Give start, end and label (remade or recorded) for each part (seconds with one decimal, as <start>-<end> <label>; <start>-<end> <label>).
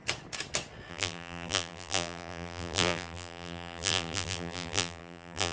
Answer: 0.0-0.9 recorded; 0.9-5.5 remade